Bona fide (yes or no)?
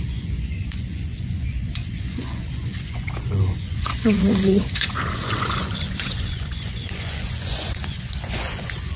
no